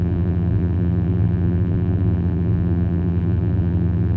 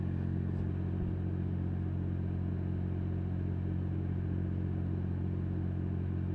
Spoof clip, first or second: first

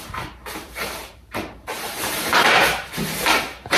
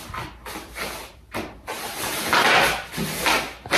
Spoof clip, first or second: first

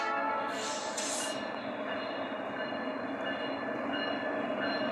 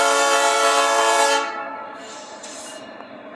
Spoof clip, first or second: second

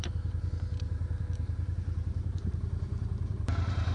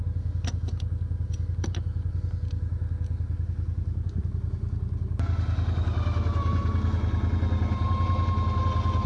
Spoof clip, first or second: first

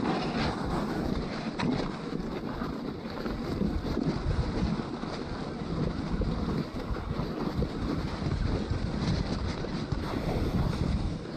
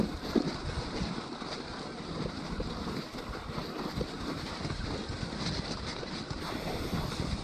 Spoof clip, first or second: second